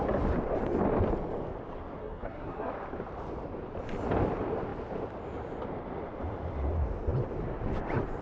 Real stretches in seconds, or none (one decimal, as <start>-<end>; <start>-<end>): 0.0-2.0; 2.7-8.2